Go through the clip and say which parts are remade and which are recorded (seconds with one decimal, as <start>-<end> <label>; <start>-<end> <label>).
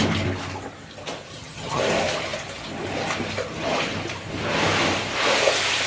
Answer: 0.0-1.3 recorded; 1.3-1.8 remade; 1.8-5.9 recorded